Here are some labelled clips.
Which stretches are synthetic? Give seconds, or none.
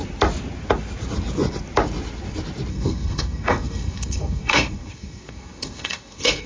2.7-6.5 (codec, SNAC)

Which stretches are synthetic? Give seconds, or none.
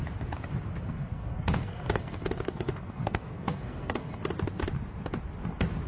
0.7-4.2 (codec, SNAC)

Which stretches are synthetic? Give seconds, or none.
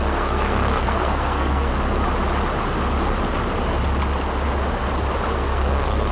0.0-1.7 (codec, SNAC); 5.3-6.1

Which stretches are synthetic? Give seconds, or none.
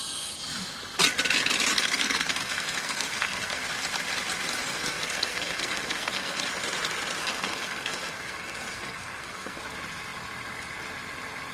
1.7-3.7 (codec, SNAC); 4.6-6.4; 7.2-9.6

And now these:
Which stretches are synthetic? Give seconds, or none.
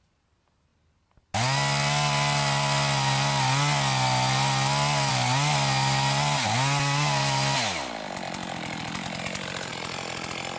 none